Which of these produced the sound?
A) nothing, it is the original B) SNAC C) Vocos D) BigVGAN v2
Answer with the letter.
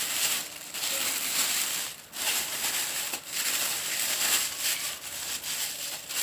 D